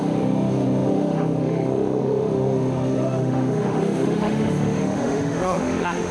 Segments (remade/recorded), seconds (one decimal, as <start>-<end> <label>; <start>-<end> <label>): 0.0-6.1 remade